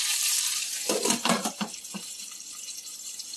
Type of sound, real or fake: fake